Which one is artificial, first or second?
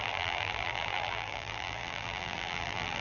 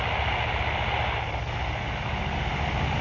first